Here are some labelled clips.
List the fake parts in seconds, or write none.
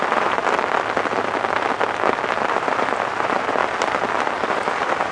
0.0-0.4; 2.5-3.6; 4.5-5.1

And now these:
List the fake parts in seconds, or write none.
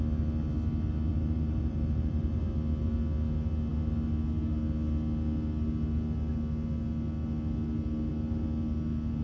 1.1-2.4